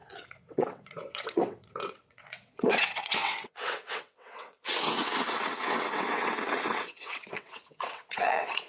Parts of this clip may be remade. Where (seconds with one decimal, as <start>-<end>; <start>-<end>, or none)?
0.0-8.7